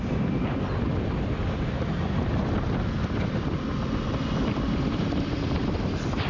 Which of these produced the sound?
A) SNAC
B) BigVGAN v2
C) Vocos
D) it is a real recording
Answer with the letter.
D